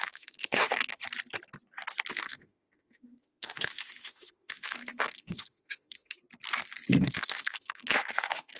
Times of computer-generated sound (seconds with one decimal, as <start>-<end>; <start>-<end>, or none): 0.0-1.0; 2.1-6.2; 7.0-8.6